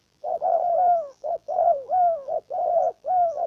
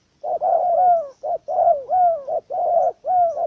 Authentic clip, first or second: second